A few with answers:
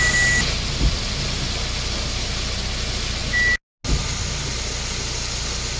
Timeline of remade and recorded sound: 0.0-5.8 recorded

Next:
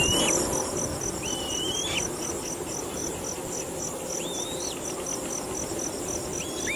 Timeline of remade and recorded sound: 0.0-6.8 recorded

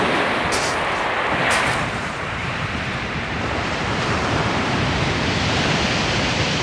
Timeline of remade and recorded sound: 0.0-1.4 recorded; 1.4-5.4 remade; 5.4-6.6 recorded

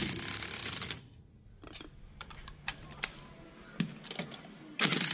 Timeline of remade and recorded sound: 0.0-0.6 recorded; 0.6-3.7 remade; 3.7-5.1 recorded

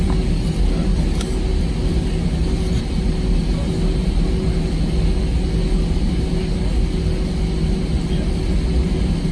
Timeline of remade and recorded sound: 0.0-9.3 recorded

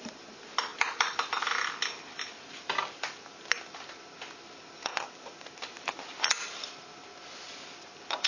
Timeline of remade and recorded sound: 0.0-0.7 recorded; 0.7-2.7 remade; 2.7-4.9 recorded; 4.9-5.7 remade; 5.7-8.3 recorded

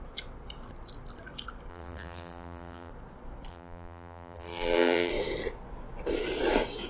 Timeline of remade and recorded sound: 0.0-1.7 recorded; 1.7-2.9 remade; 2.9-3.5 recorded; 3.5-5.1 remade; 5.1-6.9 recorded

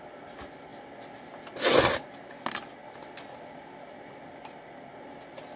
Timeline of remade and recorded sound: 0.0-5.6 recorded